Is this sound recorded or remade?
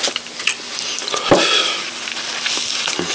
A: recorded